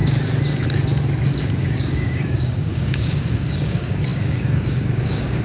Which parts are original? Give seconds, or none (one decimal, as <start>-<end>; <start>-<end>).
0.0-1.4